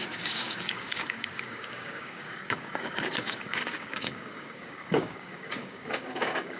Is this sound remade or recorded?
remade